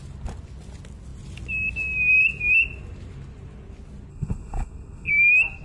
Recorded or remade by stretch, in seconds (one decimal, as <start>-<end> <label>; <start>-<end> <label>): 0.0-4.1 recorded; 4.1-5.1 remade; 5.1-5.6 recorded